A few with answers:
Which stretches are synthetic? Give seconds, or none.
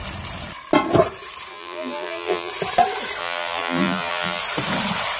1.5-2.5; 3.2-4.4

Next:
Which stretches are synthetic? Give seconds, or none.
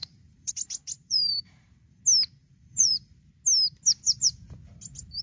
0.0-0.5; 1.0-2.0; 2.4-3.3; 3.9-4.8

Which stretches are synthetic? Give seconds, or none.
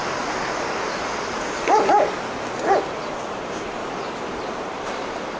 3.2-3.8; 4.4-5.4